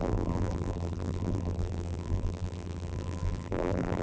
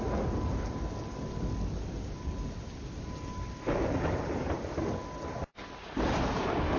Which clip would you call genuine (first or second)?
second